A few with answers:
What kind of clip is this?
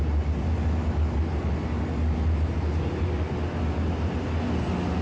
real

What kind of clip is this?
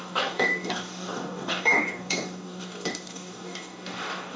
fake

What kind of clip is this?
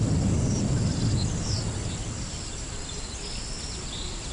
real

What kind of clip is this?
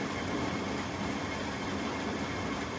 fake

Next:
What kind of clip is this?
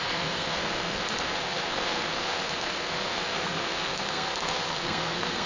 fake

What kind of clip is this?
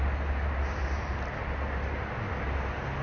real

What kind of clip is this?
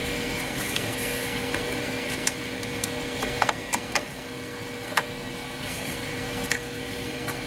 fake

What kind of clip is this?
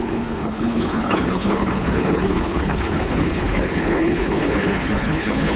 fake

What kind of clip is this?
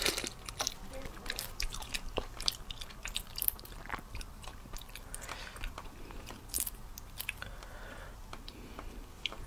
fake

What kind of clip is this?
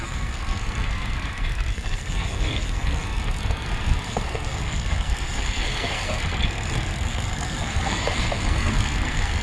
fake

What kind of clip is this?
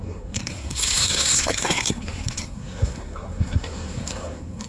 fake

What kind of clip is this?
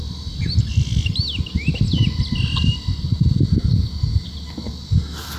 real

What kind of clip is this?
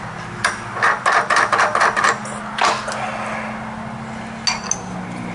real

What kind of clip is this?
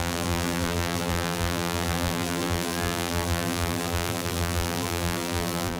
fake